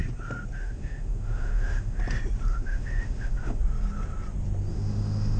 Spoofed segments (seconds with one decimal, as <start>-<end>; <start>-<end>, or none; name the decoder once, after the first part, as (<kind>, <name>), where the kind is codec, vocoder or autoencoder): 0.6-2.0 (autoencoder, DAC-VAE); 2.5-3.6; 4.7-5.4